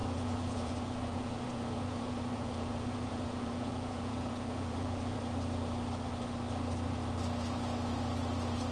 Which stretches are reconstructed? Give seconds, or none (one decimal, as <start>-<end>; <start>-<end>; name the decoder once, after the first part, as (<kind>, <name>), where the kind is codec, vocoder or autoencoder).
0.0-5.2 (vocoder, Vocos)